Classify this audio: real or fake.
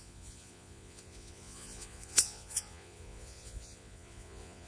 fake